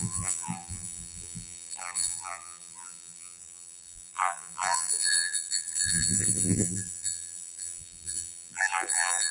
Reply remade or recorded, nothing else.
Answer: remade